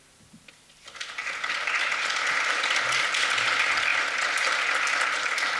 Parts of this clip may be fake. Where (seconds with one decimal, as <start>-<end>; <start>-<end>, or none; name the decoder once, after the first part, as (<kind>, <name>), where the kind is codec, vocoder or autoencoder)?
none